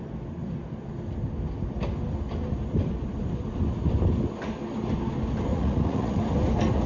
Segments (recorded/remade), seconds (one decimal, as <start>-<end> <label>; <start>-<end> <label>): 0.0-5.5 recorded; 5.5-6.2 remade; 6.2-6.9 recorded